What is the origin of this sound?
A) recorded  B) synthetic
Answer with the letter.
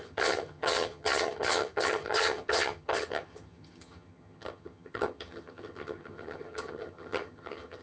B